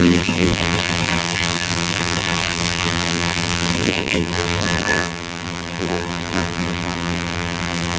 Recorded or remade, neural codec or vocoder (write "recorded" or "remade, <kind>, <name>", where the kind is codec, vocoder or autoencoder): remade, vocoder, BigVGAN v2